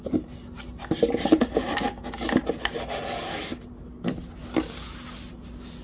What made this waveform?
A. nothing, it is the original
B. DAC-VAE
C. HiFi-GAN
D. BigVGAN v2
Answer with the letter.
A